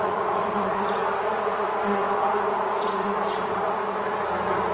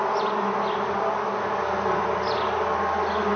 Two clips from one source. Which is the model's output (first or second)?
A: first